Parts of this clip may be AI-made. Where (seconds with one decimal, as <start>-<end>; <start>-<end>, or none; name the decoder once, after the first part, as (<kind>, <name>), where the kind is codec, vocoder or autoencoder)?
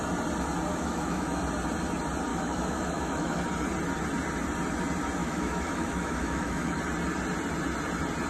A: 0.7-1.4 (autoencoder, DAC-VAE); 2.3-3.4; 5.2-6.8